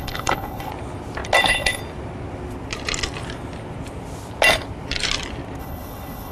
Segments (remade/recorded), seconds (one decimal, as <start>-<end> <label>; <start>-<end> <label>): 0.0-0.7 remade; 0.7-1.4 recorded; 1.4-1.8 remade; 1.8-5.6 recorded; 5.6-6.3 remade